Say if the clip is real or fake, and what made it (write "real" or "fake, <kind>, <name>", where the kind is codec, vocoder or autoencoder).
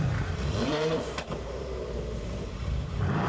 fake, vocoder, BigVGAN v2